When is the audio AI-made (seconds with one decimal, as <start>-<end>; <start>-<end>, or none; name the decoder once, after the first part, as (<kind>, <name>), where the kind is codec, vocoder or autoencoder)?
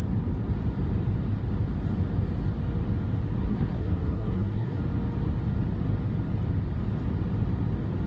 3.3-4.8 (codec, SNAC)